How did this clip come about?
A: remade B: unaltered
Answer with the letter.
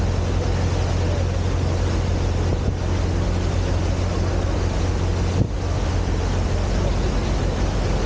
B